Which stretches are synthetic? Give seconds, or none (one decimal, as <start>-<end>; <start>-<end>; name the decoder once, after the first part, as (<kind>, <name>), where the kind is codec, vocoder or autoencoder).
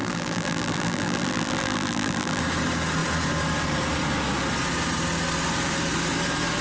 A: 0.0-2.4 (vocoder, BigVGAN v2)